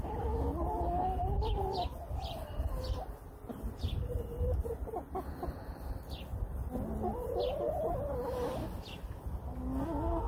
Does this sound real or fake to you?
real